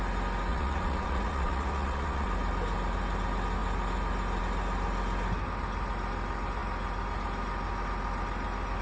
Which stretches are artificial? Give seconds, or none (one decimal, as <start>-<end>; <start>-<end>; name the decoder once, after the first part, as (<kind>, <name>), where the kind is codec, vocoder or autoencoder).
0.5-2.3 (vocoder, Vocos)